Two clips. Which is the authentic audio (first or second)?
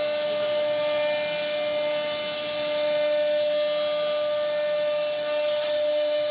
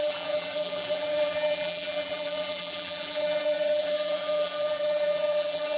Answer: first